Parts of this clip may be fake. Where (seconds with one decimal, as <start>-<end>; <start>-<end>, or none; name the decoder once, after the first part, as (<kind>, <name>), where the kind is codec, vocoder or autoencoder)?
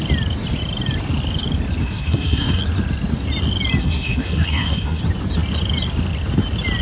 1.8-2.6 (codec, SNAC); 3.8-5.0